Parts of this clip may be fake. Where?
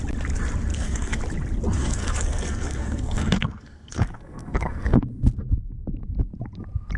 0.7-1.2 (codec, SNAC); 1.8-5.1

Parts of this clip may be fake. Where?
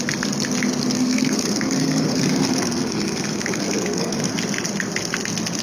0.9-4.3 (codec, SNAC)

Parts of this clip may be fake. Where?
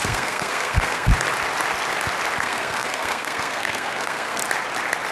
0.0-1.1 (codec, SNAC); 2.4-4.4